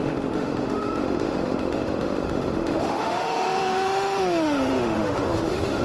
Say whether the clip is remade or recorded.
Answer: remade